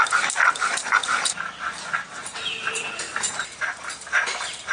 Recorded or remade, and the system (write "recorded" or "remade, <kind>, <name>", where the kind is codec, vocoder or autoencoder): remade, vocoder, BigVGAN v2